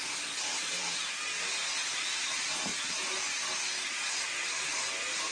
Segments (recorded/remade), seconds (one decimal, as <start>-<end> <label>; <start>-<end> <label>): 0.0-5.3 recorded